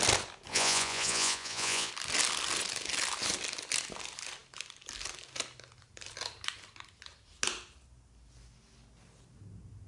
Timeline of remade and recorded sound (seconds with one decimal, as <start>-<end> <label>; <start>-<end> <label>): 0.0-0.5 recorded; 0.5-1.9 remade; 1.9-9.9 recorded